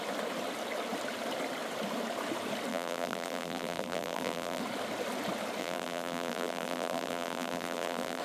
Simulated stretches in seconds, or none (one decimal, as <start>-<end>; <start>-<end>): 2.7-4.6; 5.6-8.2